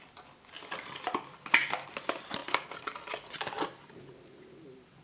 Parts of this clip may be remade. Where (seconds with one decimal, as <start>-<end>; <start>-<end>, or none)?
none